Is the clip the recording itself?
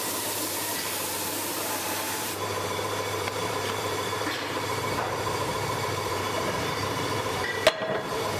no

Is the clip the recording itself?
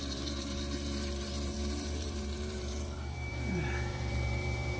no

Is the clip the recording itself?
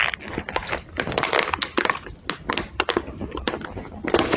yes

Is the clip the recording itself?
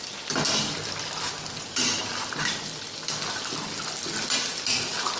yes